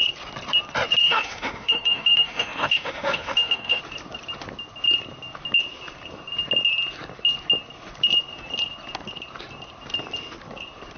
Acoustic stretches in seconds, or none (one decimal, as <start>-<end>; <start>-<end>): 0.0-1.0; 3.8-11.0